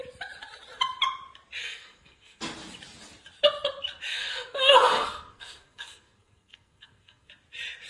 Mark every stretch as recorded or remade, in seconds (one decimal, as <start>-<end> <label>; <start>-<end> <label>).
0.0-1.6 recorded; 1.6-2.4 remade; 2.4-4.1 recorded; 4.1-7.3 remade; 7.3-7.9 recorded